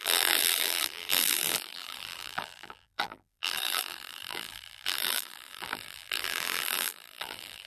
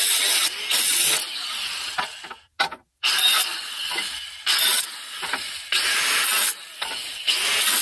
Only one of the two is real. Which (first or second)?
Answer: second